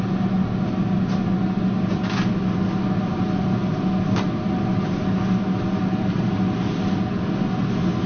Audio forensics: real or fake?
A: real